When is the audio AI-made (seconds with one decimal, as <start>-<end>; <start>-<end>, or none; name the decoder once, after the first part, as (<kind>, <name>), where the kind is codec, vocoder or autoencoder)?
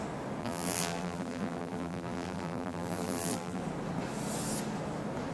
0.4-3.6 (vocoder, BigVGAN v2)